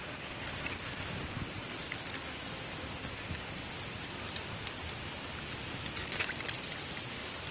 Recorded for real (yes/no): yes